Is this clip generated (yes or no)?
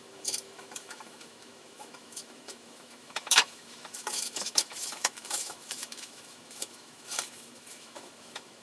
yes